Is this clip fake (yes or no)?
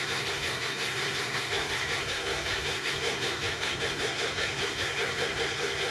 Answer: yes